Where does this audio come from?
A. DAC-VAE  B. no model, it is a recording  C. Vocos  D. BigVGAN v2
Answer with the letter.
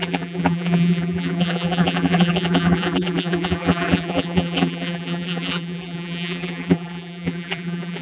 D